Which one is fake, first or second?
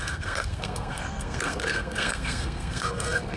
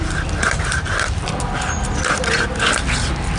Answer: first